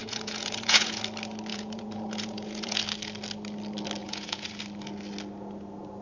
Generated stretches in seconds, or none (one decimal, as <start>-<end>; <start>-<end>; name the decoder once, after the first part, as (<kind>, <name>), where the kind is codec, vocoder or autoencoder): 0.0-1.0 (vocoder, Vocos); 1.5-2.8; 4.0-4.6